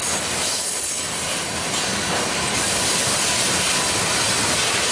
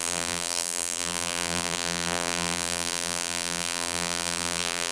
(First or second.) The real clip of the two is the first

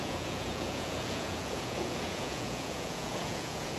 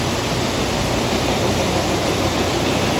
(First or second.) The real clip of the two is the second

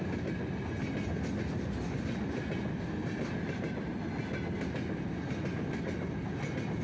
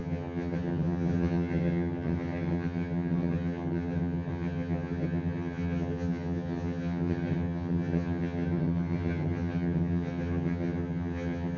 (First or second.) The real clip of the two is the first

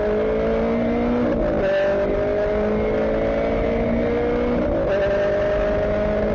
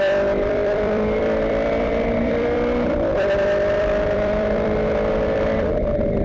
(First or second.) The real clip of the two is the first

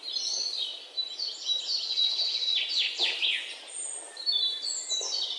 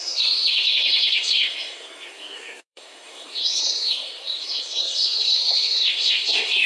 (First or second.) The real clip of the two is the first